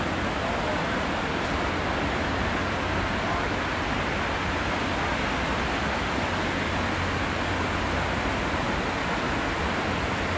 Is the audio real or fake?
real